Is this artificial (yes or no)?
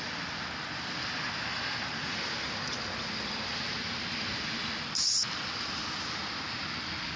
no